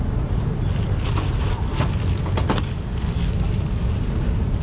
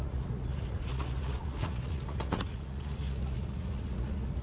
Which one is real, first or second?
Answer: first